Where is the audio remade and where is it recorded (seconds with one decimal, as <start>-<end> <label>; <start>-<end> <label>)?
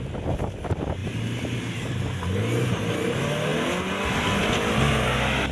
0.0-5.5 recorded